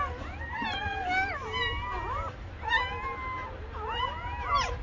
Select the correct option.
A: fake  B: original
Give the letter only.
B